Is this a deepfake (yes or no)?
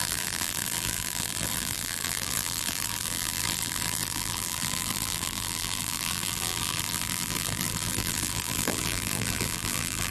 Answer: yes